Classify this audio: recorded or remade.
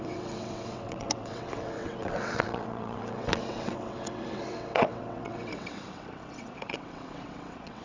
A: remade